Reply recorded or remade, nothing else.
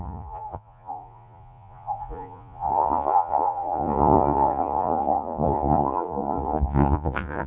remade